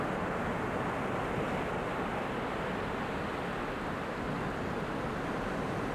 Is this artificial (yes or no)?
no